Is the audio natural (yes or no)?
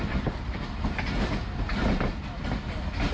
yes